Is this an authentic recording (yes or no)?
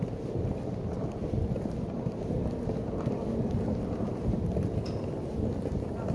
yes